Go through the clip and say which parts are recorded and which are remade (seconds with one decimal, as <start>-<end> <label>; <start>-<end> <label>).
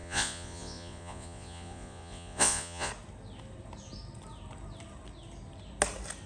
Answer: 0.0-2.9 remade; 2.9-6.3 recorded